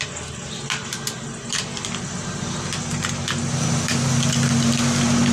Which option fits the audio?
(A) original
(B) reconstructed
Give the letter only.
A